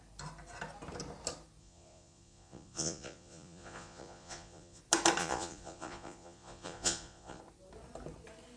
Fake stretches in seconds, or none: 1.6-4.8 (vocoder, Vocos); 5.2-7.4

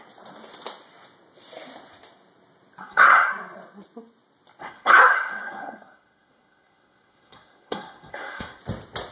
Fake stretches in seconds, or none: 2.8-3.3 (codec, SNAC); 4.6-8.6

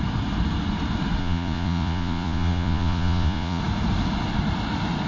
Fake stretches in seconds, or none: 1.2-3.6 (vocoder, Vocos)

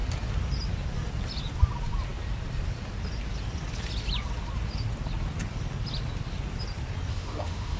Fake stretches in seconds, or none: 7.1-7.8 (autoencoder, DAC-VAE)

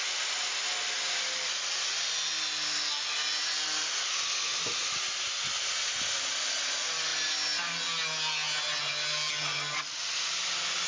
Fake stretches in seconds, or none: none